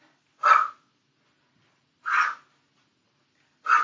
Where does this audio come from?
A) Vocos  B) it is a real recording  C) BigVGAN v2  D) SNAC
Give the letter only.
B